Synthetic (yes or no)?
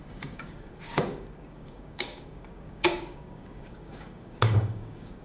yes